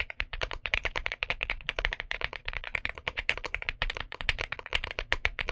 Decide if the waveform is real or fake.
fake